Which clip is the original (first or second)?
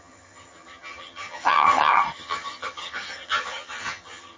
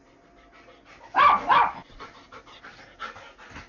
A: second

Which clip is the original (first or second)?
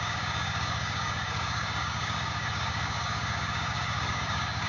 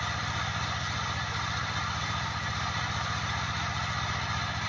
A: second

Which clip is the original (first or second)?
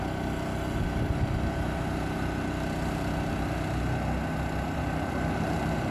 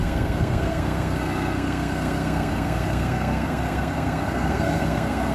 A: first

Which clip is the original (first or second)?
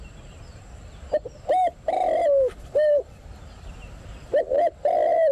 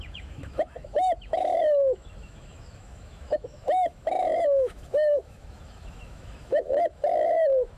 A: first